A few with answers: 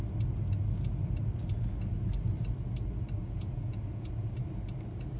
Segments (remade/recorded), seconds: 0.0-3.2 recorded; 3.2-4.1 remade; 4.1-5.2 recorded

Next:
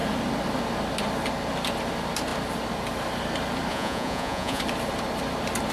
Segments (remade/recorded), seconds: 0.0-3.7 recorded; 3.7-4.6 remade; 4.6-5.7 recorded

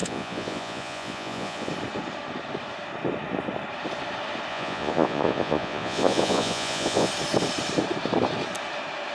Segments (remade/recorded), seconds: 0.0-1.7 remade; 1.7-4.5 recorded; 4.5-7.1 remade; 7.1-9.1 recorded

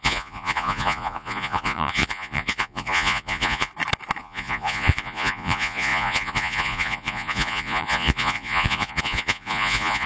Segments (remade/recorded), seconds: 0.0-3.7 remade; 3.7-4.2 recorded; 4.2-10.1 remade

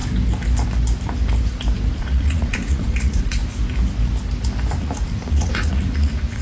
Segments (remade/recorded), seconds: 0.0-2.0 recorded; 2.0-3.4 remade; 3.4-4.8 recorded; 4.8-6.4 remade

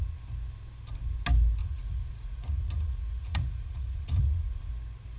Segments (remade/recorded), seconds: 0.0-1.6 recorded; 1.6-4.7 remade; 4.7-5.2 recorded

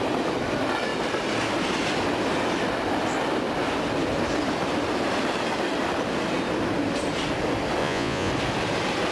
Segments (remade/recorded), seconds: 0.0-7.8 recorded; 7.8-8.3 remade; 8.3-9.1 recorded

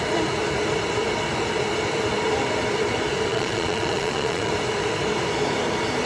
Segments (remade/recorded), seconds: 0.0-3.3 recorded; 3.3-4.5 remade; 4.5-6.1 recorded